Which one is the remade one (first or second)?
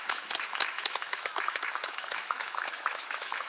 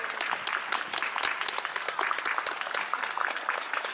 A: first